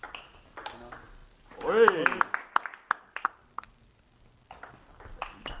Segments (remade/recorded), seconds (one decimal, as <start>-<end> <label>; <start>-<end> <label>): 0.0-5.6 recorded